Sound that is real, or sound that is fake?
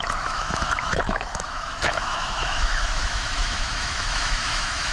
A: fake